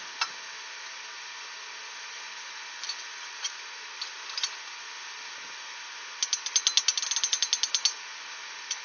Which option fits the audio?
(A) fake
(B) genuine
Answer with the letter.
B